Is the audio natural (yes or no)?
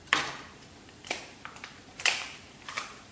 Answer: no